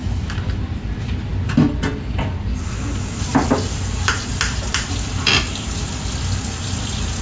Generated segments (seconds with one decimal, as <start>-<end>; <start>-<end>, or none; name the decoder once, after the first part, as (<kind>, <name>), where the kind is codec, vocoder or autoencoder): none